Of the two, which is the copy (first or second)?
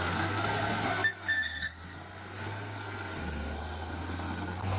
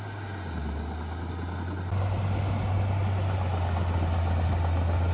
first